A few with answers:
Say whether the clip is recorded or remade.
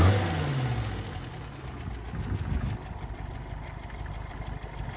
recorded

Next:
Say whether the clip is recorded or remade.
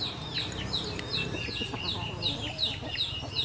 recorded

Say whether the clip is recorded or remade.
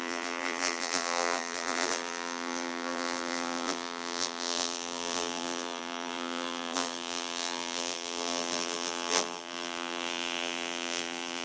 remade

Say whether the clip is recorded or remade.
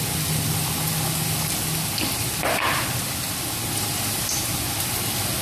recorded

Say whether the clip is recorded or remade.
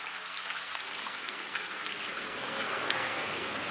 remade